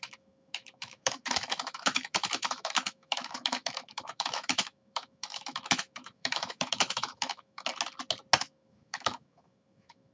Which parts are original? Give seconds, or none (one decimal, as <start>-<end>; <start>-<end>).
7.7-8.4